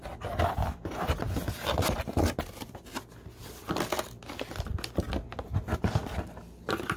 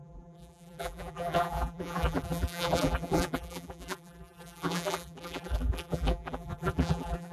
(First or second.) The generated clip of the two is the second